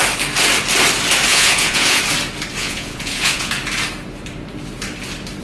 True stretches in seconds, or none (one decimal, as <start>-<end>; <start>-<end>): 0.0-1.3; 2.0-2.6; 3.5-5.4